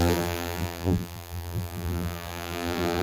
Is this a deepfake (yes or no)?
yes